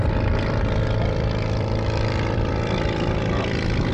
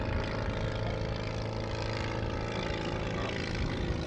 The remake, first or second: first